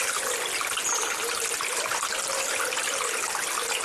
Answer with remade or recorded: recorded